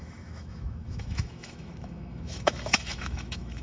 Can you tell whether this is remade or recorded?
remade